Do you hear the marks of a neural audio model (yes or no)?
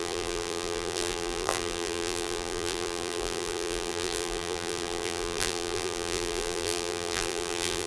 yes